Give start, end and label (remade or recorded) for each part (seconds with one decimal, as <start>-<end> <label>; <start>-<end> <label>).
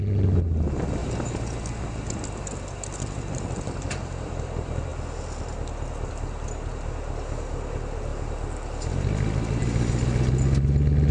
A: 0.0-11.1 recorded